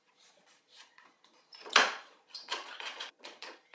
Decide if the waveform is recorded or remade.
remade